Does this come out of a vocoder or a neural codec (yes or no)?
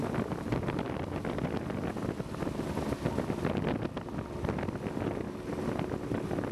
no